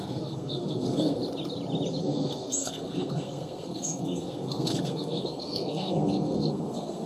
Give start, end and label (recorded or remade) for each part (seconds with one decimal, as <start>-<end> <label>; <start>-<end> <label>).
0.0-1.2 remade; 1.2-2.0 recorded; 2.0-7.1 remade